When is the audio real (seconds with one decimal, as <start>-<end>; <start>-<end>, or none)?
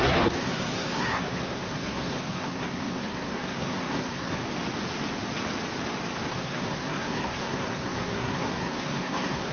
4.4-6.3